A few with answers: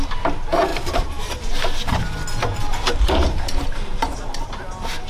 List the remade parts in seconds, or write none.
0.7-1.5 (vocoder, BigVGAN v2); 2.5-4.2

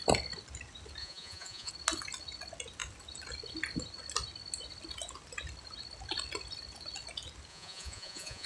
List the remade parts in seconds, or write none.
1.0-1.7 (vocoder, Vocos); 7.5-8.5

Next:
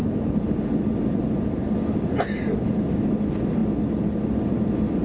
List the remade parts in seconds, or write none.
none